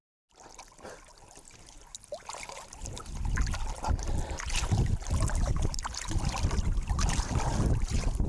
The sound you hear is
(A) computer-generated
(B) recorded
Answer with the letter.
B